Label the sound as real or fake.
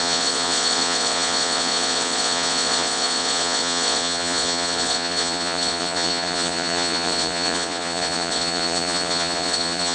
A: fake